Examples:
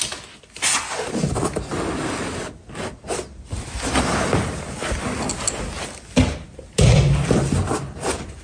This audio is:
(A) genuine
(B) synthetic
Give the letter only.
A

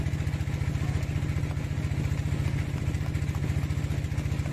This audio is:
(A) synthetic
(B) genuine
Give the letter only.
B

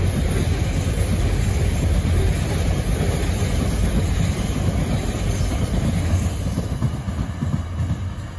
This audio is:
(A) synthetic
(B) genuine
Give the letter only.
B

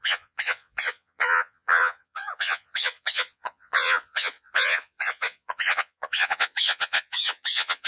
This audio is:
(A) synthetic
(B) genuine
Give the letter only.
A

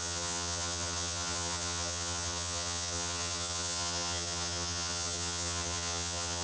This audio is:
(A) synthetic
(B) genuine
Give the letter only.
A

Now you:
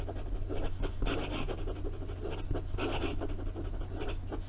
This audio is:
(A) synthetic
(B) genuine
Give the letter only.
B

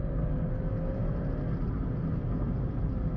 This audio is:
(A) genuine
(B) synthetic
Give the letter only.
A